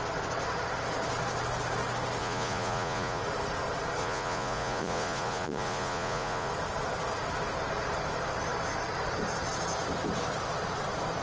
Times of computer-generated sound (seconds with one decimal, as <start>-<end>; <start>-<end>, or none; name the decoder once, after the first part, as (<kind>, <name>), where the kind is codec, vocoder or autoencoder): 2.2-3.2 (vocoder, Vocos); 4.0-6.5